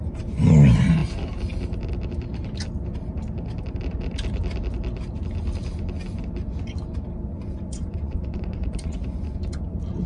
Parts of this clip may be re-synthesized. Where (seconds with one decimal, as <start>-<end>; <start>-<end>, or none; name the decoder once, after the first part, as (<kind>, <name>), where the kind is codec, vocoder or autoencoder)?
7.3-9.6 (vocoder, Vocos)